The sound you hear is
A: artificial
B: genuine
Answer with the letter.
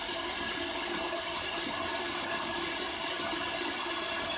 B